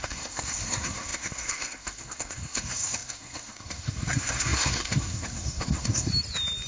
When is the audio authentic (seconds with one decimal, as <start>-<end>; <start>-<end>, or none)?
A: 6.1-6.7